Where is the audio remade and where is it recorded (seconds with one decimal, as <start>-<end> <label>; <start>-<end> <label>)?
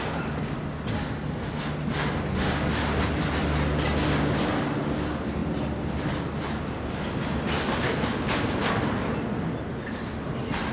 0.0-10.7 recorded